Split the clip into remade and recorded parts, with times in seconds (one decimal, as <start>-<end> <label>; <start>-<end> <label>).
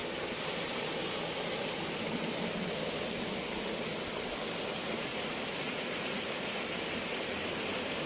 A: 0.0-5.1 recorded; 5.1-6.6 remade; 6.6-8.1 recorded